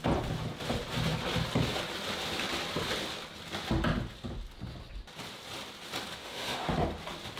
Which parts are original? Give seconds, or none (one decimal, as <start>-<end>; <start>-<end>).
0.0-6.2; 6.7-7.4